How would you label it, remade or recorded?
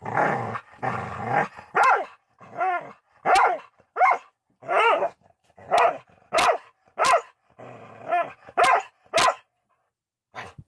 recorded